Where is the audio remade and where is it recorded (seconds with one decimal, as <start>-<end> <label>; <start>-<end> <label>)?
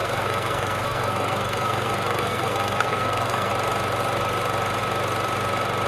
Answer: 0.0-3.5 remade; 3.5-5.9 recorded